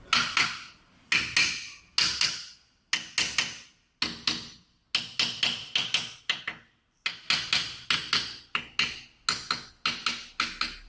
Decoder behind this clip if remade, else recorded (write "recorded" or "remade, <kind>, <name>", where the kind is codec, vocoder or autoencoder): recorded